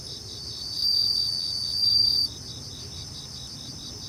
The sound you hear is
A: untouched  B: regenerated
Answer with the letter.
B